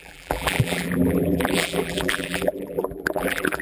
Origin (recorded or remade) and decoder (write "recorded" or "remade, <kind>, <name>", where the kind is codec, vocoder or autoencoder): remade, vocoder, BigVGAN v2